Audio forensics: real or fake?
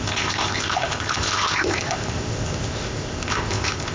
fake